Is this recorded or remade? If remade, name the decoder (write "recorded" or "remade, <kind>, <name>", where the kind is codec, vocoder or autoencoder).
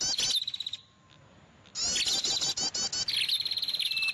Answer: recorded